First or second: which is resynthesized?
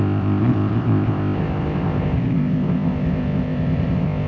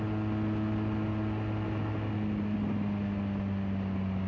first